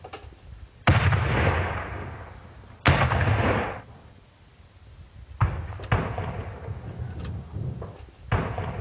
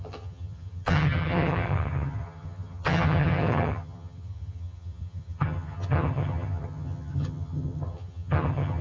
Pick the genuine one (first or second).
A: first